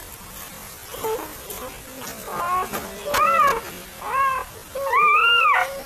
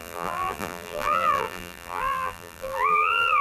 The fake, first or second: second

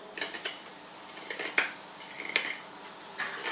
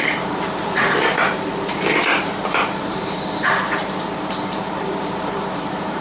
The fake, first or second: second